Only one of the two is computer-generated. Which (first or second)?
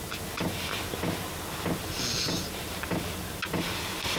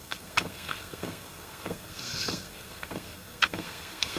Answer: second